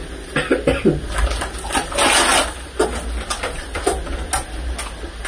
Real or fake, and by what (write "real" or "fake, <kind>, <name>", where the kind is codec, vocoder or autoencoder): real